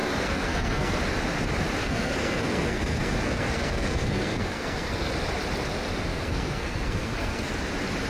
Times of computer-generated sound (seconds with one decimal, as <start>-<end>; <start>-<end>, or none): 0.0-1.0; 1.8-5.1; 6.1-7.5